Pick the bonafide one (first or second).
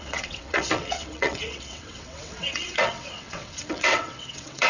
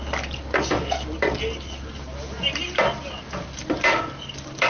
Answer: second